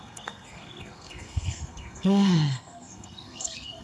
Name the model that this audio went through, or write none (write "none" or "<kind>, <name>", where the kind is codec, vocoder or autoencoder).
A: codec, SNAC